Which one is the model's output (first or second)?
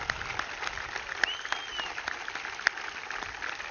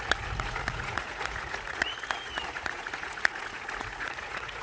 second